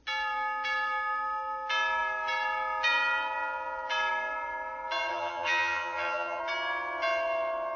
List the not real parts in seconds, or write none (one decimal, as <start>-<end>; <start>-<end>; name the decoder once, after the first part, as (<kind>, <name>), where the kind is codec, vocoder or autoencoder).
5.1-6.4 (vocoder, HiFi-GAN)